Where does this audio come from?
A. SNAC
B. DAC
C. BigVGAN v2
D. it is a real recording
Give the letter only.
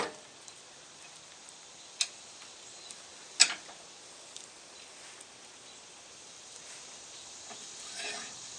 D